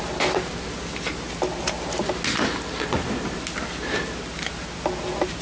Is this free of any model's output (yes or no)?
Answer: yes